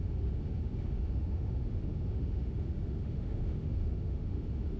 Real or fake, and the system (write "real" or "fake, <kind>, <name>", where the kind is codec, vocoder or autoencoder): fake, autoencoder, DAC-VAE